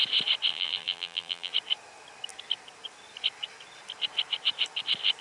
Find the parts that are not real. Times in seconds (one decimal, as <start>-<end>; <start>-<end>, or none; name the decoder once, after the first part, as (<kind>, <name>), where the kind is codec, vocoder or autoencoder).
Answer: 0.5-1.5 (vocoder, BigVGAN v2)